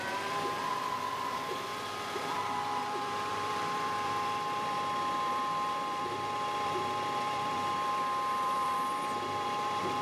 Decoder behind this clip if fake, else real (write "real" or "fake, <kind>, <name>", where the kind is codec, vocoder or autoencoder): fake, vocoder, BigVGAN v2